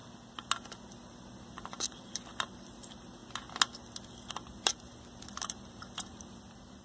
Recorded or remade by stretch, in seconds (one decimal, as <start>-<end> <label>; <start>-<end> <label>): 0.0-0.9 recorded; 0.9-3.2 remade; 3.2-4.3 recorded; 4.3-6.8 remade

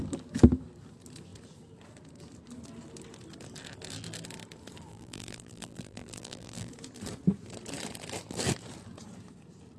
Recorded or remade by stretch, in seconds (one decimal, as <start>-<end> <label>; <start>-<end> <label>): 0.0-4.9 recorded; 4.9-6.7 remade; 6.7-9.8 recorded

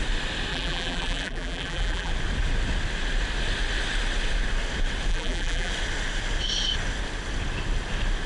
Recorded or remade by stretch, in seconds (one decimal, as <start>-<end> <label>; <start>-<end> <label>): 0.0-0.5 recorded; 0.5-2.1 remade; 2.1-5.1 recorded; 5.1-5.7 remade; 5.7-8.3 recorded

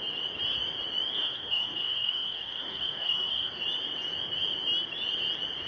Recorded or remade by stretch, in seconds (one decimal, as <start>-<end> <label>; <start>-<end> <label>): 0.0-1.1 recorded; 1.1-3.6 remade; 3.6-5.7 recorded

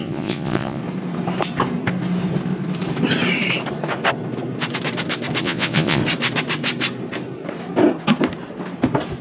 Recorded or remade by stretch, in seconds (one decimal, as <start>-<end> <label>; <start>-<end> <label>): 0.0-0.8 remade; 0.8-5.4 recorded; 5.4-6.0 remade; 6.0-9.2 recorded